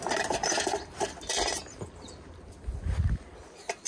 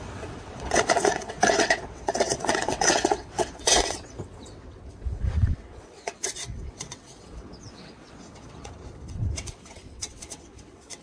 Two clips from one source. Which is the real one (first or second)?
first